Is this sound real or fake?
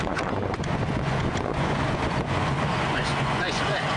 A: fake